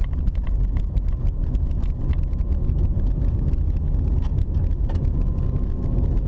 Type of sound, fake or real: real